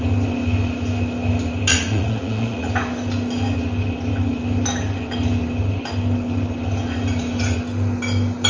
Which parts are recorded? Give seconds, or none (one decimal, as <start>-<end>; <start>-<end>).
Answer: 0.0-1.7; 2.7-8.5

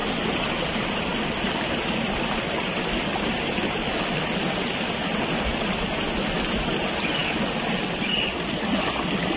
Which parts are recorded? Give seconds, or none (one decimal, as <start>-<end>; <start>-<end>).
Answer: 0.0-9.4